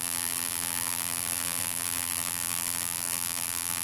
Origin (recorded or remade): remade